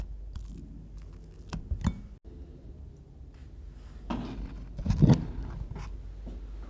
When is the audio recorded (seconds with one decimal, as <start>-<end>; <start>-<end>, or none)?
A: 0.0-6.7